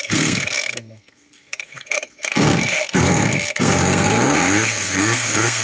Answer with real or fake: fake